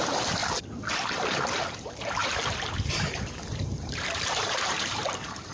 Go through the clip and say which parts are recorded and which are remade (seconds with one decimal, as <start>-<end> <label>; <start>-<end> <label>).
0.0-0.4 remade; 0.4-1.1 recorded; 1.1-5.5 remade